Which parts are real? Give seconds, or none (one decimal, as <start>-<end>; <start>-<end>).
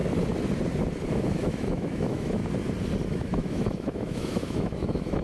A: 0.0-1.1; 2.4-3.1